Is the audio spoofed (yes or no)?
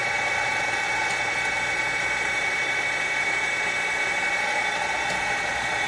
no